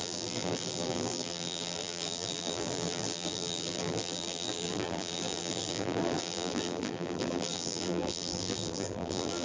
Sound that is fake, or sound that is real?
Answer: fake